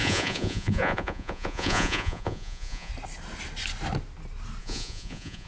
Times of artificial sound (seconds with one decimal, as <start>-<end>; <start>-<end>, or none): 0.0-2.9; 4.6-5.5